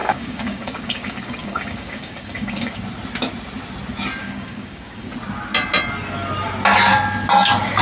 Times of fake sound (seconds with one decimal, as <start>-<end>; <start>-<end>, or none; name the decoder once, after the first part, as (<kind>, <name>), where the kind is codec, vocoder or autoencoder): 0.0-2.8 (codec, DAC); 4.2-5.1

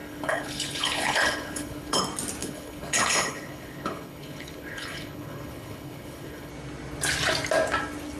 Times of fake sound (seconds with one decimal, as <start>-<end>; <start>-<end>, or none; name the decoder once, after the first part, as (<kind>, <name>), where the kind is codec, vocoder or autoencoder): 0.0-2.0 (codec, HILCodec); 2.4-6.5

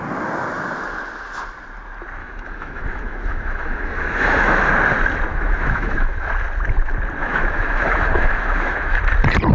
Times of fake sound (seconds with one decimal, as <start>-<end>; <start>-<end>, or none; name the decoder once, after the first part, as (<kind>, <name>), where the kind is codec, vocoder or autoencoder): 2.2-4.7 (autoencoder, DAC-VAE); 5.3-6.3; 7.2-9.0